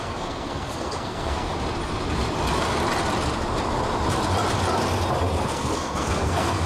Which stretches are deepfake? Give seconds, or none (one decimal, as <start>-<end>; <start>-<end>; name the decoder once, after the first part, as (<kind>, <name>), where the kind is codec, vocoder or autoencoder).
0.0-1.5 (codec, SNAC); 5.4-6.7